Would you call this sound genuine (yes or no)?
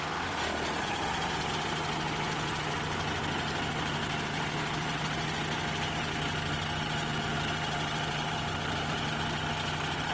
yes